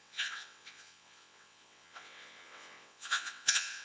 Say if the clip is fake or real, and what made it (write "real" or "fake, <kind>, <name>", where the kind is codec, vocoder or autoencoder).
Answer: fake, vocoder, WaveNeXt